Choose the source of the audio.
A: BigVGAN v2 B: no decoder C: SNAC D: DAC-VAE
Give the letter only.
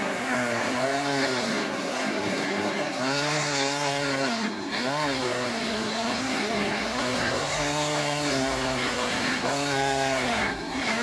C